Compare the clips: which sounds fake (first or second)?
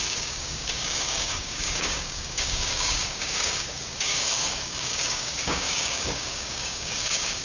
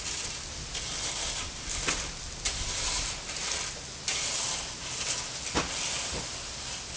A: first